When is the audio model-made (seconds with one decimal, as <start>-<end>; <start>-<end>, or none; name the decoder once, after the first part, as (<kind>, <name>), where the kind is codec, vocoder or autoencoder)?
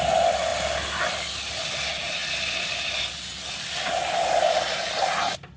none